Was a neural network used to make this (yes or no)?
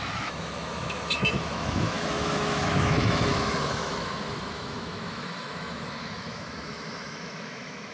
yes